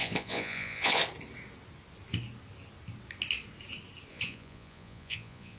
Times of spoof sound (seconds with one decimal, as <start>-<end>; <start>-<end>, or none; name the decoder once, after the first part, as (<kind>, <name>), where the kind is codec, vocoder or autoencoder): 0.0-1.0 (vocoder, Vocos); 4.1-5.6